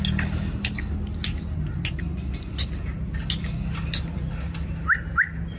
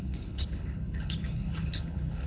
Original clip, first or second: first